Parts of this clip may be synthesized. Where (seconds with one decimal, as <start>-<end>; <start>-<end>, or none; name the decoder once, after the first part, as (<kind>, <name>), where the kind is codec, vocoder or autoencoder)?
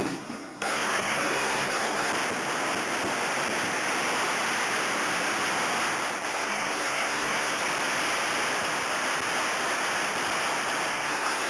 0.0-2.1 (codec, SNAC); 6.3-7.6; 10.9-11.5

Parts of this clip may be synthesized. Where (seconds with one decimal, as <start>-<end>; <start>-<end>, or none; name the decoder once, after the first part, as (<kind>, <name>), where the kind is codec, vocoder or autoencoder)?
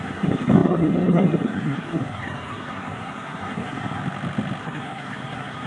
0.0-4.0 (codec, SNAC); 4.6-5.7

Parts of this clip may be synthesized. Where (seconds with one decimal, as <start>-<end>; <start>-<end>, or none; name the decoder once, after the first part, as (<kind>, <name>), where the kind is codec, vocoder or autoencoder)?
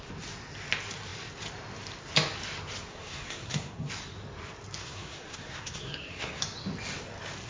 2.9-3.9 (codec, SNAC); 4.8-6.4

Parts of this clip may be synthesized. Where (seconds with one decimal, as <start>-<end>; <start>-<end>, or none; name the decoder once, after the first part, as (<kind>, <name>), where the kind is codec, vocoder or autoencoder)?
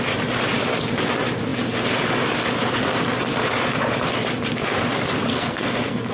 5.3-6.1 (codec, SNAC)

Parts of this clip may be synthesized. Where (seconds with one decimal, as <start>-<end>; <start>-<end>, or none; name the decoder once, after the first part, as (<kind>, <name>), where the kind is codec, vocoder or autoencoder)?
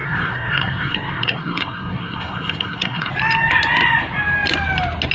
0.0-3.1 (codec, SNAC)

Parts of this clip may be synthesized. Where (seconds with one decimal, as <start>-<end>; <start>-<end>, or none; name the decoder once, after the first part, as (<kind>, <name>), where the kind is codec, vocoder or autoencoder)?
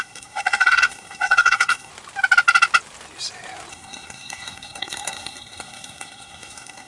0.0-1.9 (codec, SNAC); 3.7-6.9